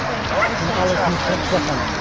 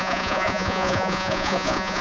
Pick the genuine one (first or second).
first